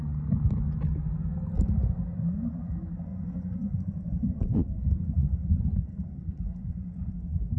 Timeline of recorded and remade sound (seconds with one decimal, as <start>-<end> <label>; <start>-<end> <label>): 0.0-3.1 recorded; 3.1-7.1 remade; 7.1-7.6 recorded